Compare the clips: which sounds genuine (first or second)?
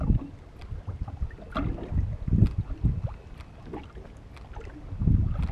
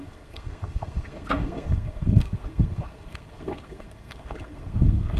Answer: first